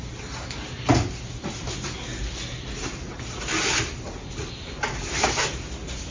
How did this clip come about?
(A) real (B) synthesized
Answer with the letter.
A